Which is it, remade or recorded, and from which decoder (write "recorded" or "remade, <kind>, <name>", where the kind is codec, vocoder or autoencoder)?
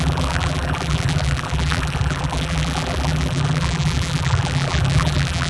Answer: remade, vocoder, BigVGAN v2